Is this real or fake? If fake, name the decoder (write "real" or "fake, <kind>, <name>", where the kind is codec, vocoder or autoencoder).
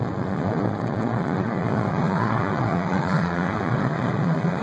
fake, vocoder, Vocos